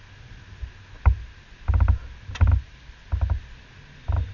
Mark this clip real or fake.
real